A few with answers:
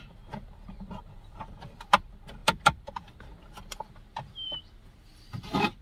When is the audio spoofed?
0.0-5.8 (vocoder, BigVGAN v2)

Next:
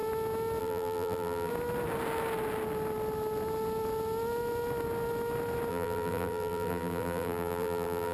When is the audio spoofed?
0.6-1.5 (vocoder, BigVGAN v2); 5.7-8.1